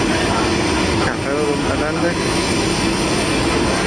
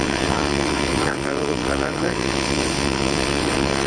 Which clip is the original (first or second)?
first